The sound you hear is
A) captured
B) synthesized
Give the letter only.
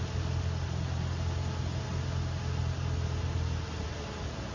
A